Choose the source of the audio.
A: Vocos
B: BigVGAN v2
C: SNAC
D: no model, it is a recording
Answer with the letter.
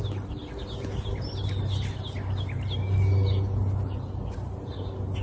D